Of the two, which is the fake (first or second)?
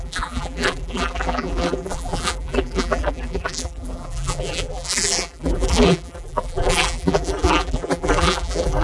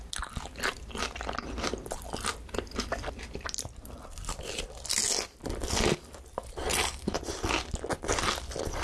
first